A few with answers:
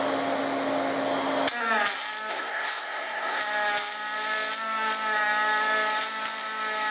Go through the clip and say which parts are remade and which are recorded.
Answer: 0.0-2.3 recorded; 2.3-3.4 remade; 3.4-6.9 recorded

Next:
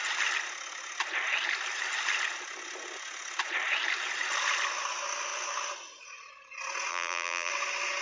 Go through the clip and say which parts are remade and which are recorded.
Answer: 0.0-6.9 recorded; 6.9-7.5 remade; 7.5-8.0 recorded

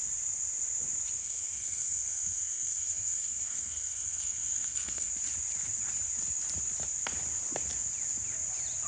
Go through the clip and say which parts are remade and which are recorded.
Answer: 0.0-1.2 recorded; 1.2-5.1 remade; 5.1-8.9 recorded

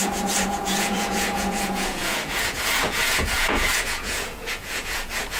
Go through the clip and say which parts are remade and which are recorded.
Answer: 0.0-5.4 remade